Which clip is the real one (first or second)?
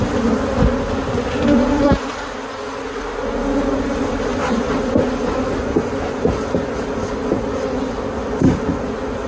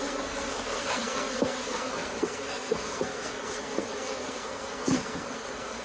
first